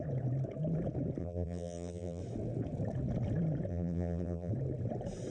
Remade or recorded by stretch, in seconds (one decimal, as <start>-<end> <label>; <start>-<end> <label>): 0.0-1.2 recorded; 1.2-2.2 remade; 2.2-3.7 recorded; 3.7-4.5 remade; 4.5-5.3 recorded